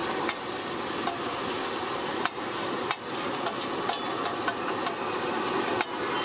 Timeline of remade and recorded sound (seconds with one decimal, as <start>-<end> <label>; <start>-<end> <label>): 0.0-6.2 recorded

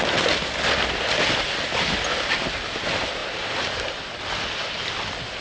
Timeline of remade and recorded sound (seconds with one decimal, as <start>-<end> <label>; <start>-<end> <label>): 0.0-5.4 recorded

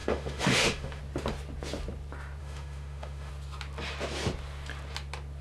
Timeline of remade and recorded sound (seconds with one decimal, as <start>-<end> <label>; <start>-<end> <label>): 0.0-1.0 remade; 1.0-2.4 recorded; 2.4-3.3 remade; 3.3-5.4 recorded

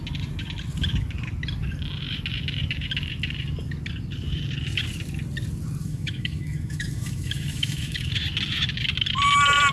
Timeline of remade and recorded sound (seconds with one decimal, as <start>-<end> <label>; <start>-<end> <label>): 0.0-5.8 recorded; 5.8-8.1 remade; 8.1-9.7 recorded

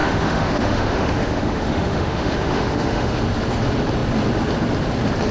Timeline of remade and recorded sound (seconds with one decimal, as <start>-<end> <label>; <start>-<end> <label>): 0.0-3.2 remade; 3.2-5.3 recorded

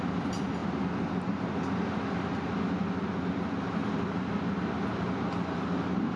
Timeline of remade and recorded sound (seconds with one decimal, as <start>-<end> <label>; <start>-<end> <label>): 0.0-6.2 recorded

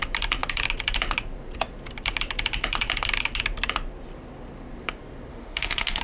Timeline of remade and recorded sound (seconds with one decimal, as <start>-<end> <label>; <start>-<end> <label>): 0.0-5.3 recorded; 5.3-6.0 remade

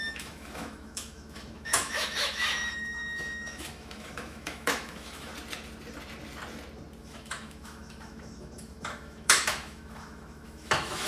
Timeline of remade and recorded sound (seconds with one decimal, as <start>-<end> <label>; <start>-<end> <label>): 0.0-5.3 remade; 5.3-7.0 recorded; 7.0-11.1 remade